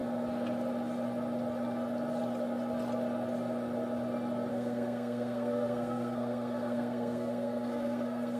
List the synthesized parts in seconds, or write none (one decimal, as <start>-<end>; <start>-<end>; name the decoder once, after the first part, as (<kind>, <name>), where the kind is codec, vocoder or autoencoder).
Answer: 4.5-8.4 (codec, SNAC)